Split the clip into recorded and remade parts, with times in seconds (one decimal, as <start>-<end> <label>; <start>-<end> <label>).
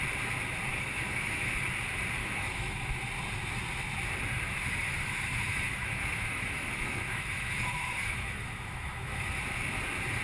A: 0.0-0.7 recorded; 0.7-1.6 remade; 1.6-2.2 recorded; 2.2-3.0 remade; 3.0-4.5 recorded; 4.5-9.4 remade; 9.4-10.2 recorded